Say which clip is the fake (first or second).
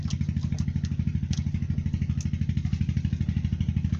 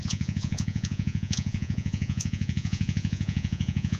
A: second